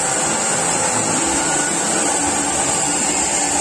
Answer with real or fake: real